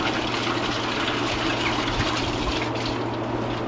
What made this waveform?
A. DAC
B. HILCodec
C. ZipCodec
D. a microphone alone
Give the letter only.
D